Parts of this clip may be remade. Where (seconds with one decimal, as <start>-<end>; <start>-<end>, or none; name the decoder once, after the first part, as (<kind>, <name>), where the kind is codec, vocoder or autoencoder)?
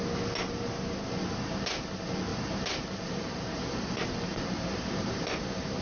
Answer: 2.3-5.8 (vocoder, BigVGAN v2)